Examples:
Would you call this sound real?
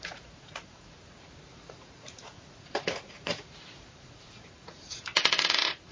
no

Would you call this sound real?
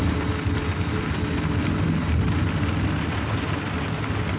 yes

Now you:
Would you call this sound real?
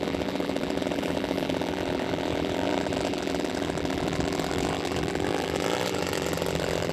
no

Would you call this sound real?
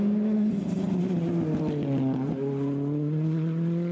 yes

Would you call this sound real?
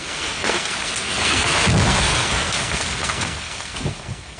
no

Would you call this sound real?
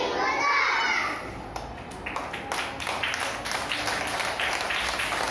yes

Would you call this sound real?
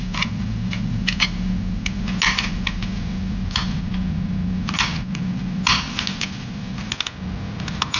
yes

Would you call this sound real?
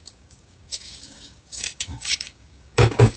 no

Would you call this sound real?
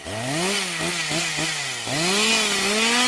yes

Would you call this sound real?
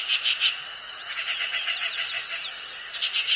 yes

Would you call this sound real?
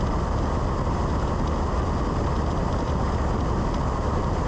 yes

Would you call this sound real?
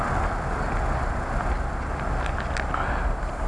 yes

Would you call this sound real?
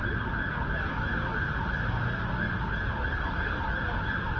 yes